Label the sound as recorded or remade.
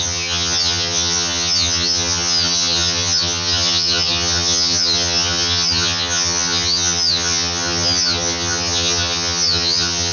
remade